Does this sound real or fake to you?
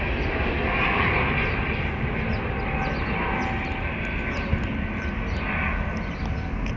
real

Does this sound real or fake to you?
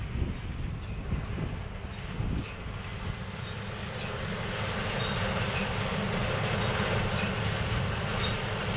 real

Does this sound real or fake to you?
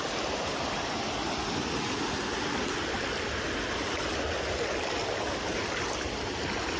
real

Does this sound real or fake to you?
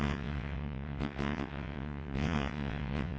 fake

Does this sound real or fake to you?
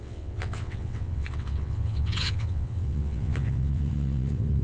fake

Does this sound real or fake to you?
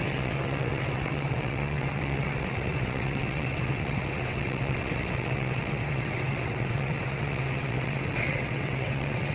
fake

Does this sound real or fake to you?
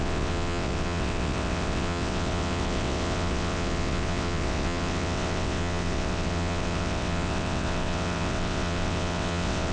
fake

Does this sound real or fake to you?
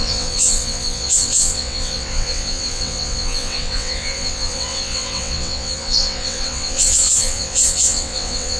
fake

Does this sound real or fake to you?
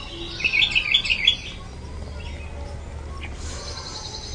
real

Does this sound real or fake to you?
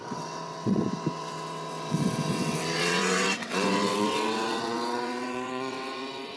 fake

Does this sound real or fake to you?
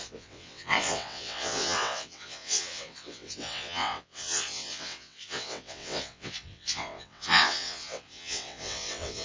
fake